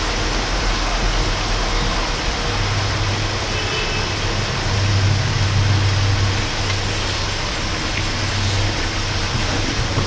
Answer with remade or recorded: recorded